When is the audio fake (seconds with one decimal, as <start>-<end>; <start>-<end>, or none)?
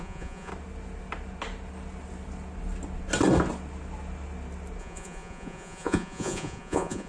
0.0-0.5; 4.8-7.1